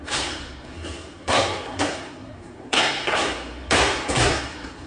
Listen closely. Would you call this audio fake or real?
fake